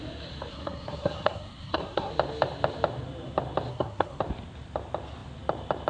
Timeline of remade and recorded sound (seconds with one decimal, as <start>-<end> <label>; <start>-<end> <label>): 0.0-0.5 recorded; 0.5-2.1 remade; 2.1-3.7 recorded; 3.7-4.2 remade; 4.2-5.9 recorded